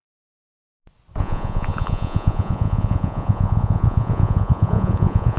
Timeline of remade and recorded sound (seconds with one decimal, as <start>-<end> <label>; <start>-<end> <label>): 0.0-0.6 remade; 0.6-1.2 recorded; 1.2-5.4 remade